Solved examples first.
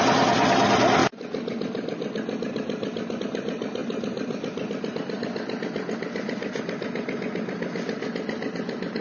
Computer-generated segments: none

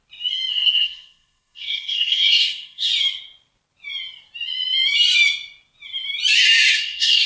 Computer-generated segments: 0.5-2.9 (codec, SNAC); 6.7-7.3

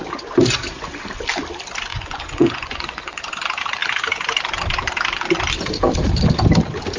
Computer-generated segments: 1.9-3.2 (vocoder, Vocos)

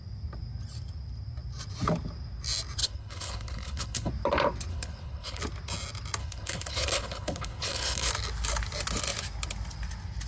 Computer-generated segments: 2.8-4.1 (codec, HILCodec); 4.7-5.4; 6.2-8.1

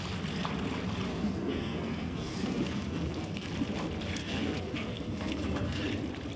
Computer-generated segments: 1.1-3.5 (codec, SNAC); 4.2-5.8

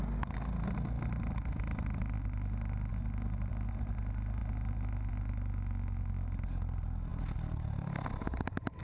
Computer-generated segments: none

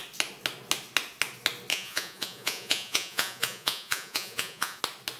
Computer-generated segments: 1.7-4.8 (vocoder, Vocos)

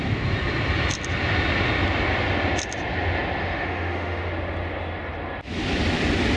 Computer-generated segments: 3.4-4.3 (autoencoder, DAC-VAE)